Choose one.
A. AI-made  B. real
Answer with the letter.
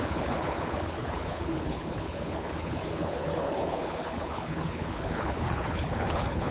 A